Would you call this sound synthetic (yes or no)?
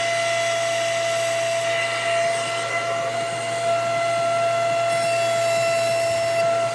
no